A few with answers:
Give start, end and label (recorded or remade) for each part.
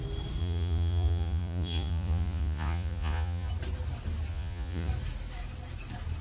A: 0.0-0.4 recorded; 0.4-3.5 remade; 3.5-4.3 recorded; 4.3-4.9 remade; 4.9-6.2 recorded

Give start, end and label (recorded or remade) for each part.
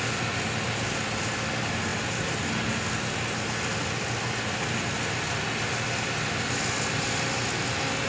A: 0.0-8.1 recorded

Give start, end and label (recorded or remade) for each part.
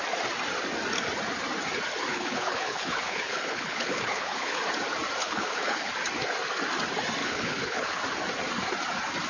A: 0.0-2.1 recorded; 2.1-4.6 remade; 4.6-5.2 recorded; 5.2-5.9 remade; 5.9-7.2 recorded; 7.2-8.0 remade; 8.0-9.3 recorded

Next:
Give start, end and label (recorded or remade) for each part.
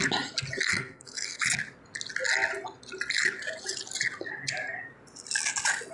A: 0.0-0.7 recorded; 0.7-1.4 remade; 1.4-5.9 recorded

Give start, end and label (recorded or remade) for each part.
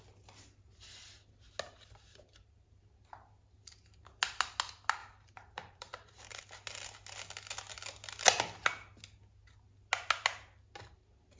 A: 0.0-5.0 recorded; 5.0-6.4 remade; 6.4-11.4 recorded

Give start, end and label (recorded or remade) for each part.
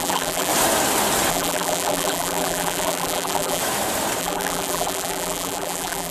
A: 0.0-0.5 remade; 0.5-1.3 recorded; 1.3-3.6 remade; 3.6-4.2 recorded; 4.2-6.1 remade